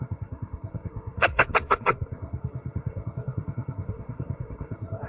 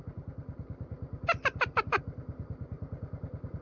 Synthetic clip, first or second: first